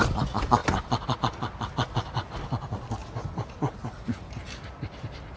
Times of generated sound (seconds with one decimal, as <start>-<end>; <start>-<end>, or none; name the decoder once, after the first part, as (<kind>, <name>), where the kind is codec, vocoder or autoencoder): 0.6-1.2 (vocoder, BigVGAN v2); 3.0-5.4